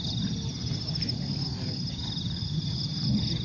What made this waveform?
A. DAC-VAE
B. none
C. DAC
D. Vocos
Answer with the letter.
B